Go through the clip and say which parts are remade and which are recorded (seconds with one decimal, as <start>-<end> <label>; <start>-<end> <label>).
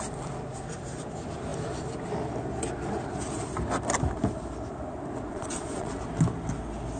0.0-5.3 recorded; 5.3-5.9 remade; 5.9-7.0 recorded